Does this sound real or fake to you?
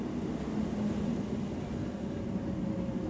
real